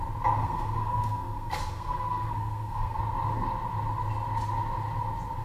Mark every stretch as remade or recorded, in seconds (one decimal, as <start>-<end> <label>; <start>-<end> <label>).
0.0-0.4 recorded; 0.4-3.0 remade; 3.0-5.4 recorded